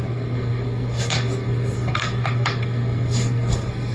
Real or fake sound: fake